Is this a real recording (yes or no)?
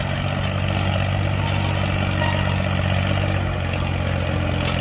yes